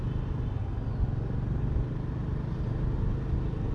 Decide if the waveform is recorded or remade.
recorded